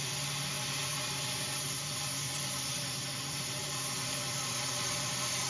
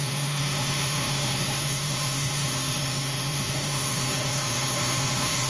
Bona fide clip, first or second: first